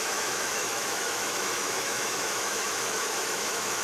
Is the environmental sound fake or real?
fake